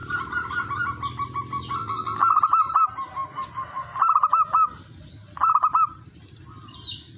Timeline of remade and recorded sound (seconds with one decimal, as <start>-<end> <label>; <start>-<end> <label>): 0.0-1.8 recorded; 1.8-2.4 remade; 2.4-7.2 recorded

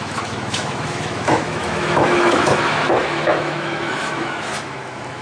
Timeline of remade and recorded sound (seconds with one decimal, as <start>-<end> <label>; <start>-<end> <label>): 0.0-5.2 remade

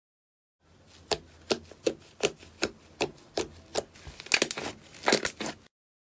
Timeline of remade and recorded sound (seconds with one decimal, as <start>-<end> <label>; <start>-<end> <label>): 0.0-6.1 recorded